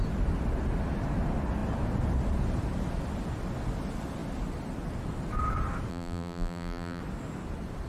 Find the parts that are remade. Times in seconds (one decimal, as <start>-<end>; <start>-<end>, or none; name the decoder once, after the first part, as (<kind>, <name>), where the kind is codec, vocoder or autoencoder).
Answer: 5.9-7.0 (vocoder, BigVGAN v2)